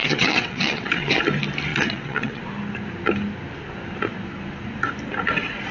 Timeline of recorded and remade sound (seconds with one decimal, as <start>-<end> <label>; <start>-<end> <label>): 0.0-1.1 remade; 1.1-1.7 recorded; 1.7-2.4 remade; 2.4-5.7 recorded